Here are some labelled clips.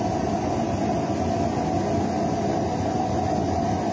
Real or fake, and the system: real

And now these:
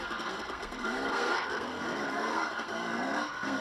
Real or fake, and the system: fake, codec, SNAC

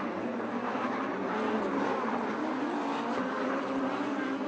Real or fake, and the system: real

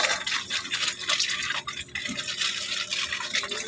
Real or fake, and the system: real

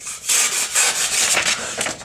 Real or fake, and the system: real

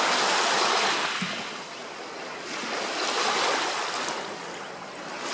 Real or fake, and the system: real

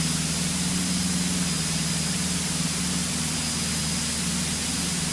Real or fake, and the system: real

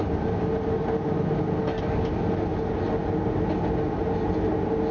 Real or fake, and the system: real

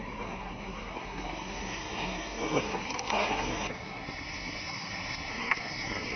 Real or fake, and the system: fake, codec, SNAC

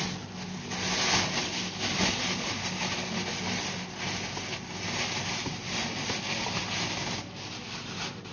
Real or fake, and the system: real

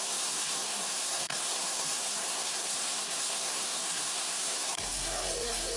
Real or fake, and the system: fake, codec, SNAC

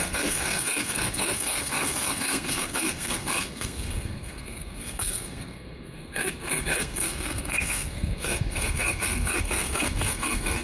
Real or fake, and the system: fake, codec, SNAC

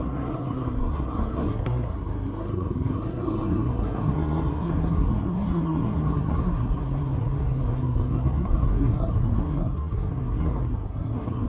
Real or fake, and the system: fake, codec, SNAC